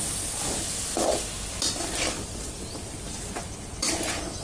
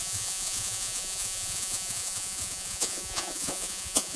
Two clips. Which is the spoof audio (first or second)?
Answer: second